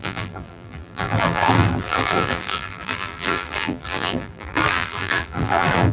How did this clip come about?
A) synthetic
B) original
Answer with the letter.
A